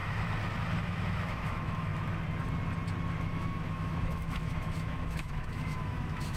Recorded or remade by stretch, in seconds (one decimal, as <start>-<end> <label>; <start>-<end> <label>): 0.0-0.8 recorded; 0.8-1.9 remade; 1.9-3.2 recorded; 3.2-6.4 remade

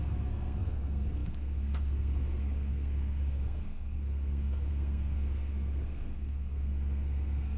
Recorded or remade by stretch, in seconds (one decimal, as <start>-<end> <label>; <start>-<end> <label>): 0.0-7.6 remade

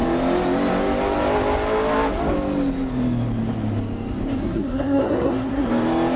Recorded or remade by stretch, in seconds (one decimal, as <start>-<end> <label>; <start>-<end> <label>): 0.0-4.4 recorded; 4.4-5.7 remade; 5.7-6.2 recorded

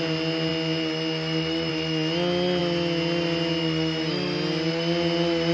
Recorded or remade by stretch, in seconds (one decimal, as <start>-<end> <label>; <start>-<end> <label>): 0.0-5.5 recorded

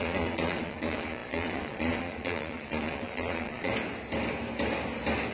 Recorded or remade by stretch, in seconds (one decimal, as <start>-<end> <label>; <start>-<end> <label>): 0.0-3.7 remade; 3.7-5.3 recorded